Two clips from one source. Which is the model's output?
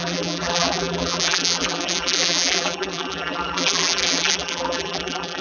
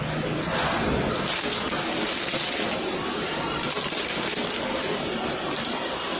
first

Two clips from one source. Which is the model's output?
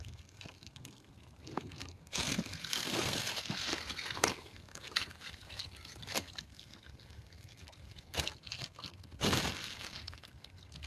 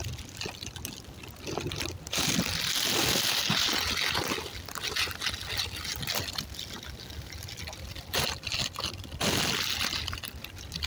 first